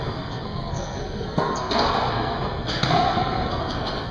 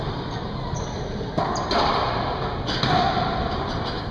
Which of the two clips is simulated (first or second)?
first